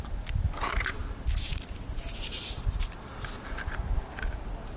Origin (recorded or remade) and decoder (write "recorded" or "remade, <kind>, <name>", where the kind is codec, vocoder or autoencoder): recorded